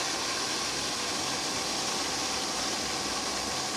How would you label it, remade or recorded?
recorded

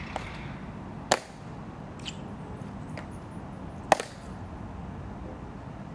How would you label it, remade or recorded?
recorded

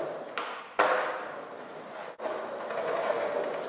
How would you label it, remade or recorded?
recorded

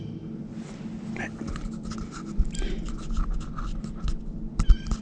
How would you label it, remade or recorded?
recorded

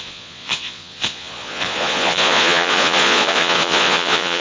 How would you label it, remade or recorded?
remade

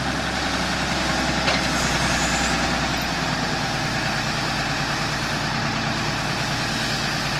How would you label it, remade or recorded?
recorded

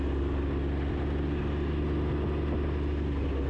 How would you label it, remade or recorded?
recorded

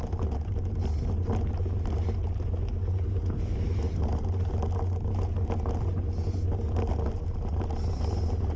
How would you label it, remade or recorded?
recorded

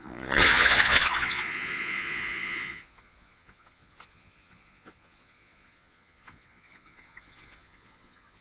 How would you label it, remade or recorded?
remade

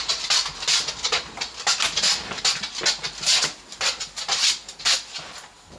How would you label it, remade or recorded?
recorded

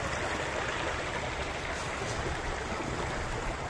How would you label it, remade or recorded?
recorded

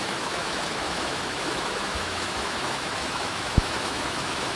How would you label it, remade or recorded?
remade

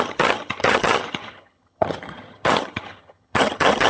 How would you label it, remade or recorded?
remade